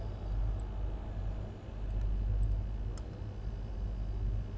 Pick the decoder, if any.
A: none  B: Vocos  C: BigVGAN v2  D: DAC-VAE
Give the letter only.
A